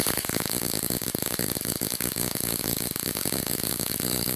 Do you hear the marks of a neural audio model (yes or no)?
yes